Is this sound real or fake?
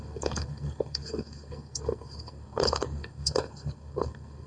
fake